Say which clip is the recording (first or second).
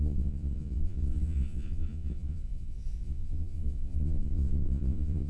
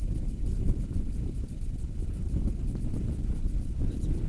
second